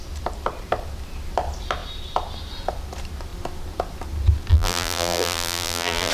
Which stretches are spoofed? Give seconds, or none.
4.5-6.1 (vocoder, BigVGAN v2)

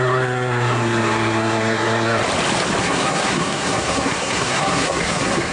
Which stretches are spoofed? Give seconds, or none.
0.0-2.2 (codec, SNAC); 2.8-5.5

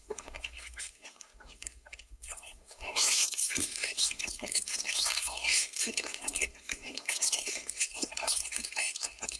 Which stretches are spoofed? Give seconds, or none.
0.0-9.4 (codec, SNAC)

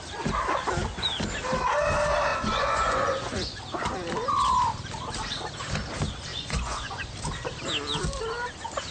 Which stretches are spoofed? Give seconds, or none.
2.3-3.6 (vocoder, Vocos); 6.3-7.1

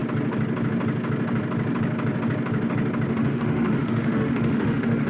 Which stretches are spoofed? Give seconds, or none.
3.1-5.1 (autoencoder, DAC-VAE)

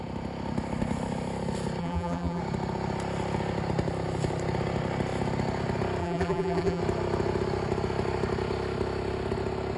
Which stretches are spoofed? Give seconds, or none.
1.8-2.4 (vocoder, BigVGAN v2); 6.0-6.8

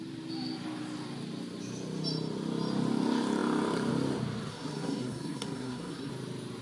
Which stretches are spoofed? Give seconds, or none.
4.5-6.1 (codec, SNAC)